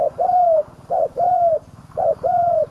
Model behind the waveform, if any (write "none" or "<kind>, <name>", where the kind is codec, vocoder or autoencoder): vocoder, Vocos